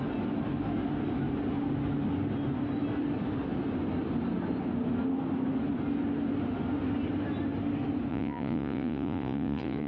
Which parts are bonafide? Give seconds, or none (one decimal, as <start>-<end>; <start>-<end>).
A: 0.0-8.1